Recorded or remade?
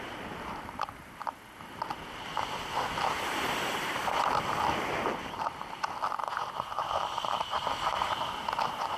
recorded